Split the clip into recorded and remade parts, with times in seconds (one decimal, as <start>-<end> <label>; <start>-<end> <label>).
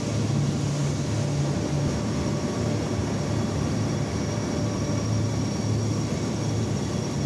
0.0-7.3 recorded